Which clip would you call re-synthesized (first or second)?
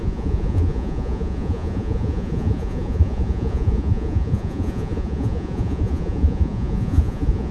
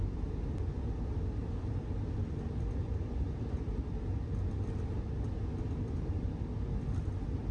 first